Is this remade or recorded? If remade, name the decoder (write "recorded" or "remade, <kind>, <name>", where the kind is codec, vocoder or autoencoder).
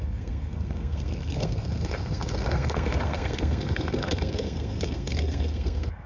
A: remade, codec, SNAC